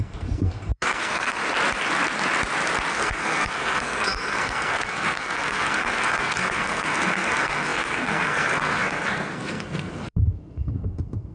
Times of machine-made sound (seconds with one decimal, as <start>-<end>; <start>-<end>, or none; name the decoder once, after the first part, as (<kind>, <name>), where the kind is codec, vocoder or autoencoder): 0.0-1.4 (codec, SNAC); 2.9-11.3